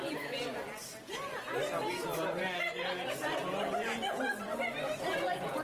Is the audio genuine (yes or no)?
yes